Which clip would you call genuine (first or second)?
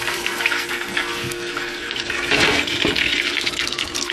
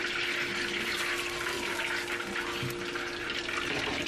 second